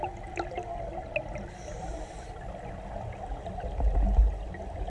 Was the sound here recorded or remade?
recorded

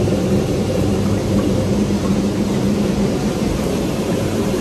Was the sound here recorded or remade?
remade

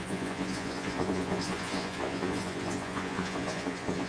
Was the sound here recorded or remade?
remade